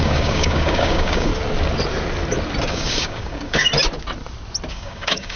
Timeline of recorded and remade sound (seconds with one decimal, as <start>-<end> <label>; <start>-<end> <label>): 0.0-1.3 remade; 1.3-2.7 recorded; 2.7-3.7 remade; 3.7-4.7 recorded; 4.7-5.4 remade

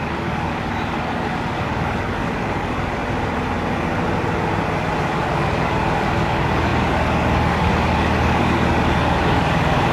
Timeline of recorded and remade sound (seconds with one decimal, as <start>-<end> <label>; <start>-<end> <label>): 0.0-3.0 remade; 3.0-5.0 recorded; 5.0-9.9 remade